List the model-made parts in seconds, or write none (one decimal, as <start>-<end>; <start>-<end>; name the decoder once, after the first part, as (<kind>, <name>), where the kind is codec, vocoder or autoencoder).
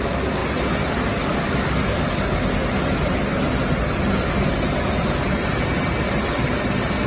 none